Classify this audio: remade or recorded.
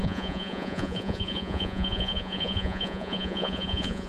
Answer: remade